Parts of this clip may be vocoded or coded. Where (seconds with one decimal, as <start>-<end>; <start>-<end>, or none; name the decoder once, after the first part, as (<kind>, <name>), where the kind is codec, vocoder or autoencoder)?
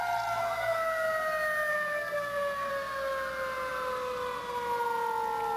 0.4-1.1 (codec, SNAC); 1.7-2.7